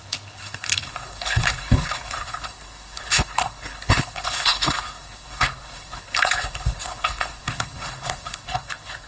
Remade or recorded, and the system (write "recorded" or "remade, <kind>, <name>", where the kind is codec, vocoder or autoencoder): remade, codec, HILCodec